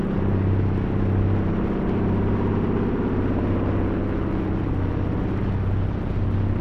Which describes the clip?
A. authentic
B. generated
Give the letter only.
A